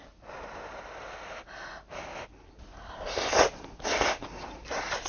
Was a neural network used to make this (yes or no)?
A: no